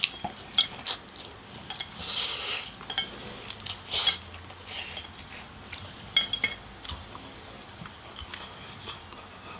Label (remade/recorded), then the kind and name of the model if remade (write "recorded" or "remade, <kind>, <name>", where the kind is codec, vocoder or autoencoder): recorded